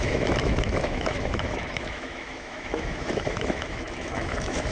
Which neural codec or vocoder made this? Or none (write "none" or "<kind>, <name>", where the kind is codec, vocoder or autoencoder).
autoencoder, DAC-VAE